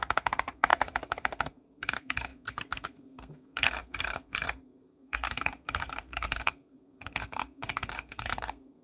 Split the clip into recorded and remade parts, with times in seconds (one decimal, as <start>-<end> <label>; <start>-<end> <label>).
0.0-8.8 remade